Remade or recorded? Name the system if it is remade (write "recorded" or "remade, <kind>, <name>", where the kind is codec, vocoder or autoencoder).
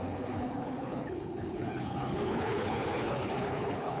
remade, codec, HILCodec